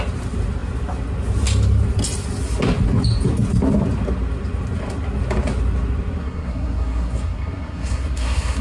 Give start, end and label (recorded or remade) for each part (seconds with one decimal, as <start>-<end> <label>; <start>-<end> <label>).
0.0-6.2 recorded; 6.2-8.6 remade